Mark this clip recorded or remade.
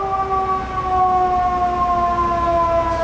recorded